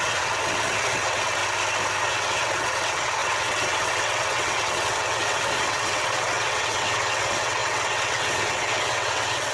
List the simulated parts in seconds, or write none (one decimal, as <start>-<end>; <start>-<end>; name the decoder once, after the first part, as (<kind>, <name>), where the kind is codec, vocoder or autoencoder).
0.0-1.4 (vocoder, WaveNeXt); 2.0-9.5